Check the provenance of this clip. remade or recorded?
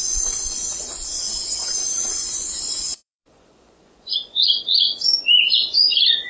remade